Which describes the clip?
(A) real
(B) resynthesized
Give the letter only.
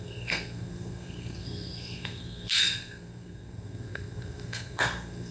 B